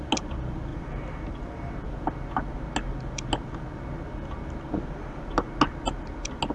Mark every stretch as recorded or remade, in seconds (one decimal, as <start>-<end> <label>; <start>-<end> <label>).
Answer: 0.0-0.7 recorded; 0.7-1.7 remade; 1.7-6.5 recorded